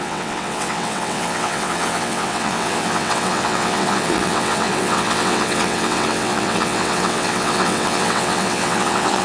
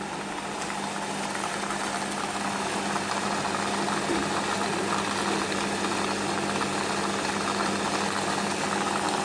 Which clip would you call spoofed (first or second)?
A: first